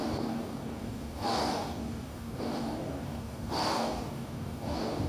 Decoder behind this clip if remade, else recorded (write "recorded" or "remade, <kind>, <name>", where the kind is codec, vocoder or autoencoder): remade, codec, DAC